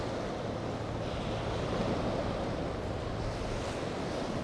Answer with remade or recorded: recorded